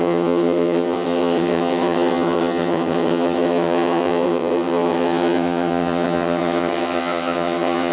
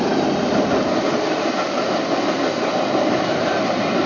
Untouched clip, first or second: second